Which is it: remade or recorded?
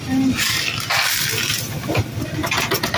recorded